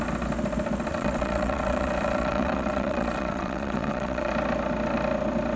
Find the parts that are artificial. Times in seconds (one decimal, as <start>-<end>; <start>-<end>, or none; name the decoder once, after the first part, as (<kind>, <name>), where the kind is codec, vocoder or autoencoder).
0.9-4.3 (vocoder, WaveNeXt)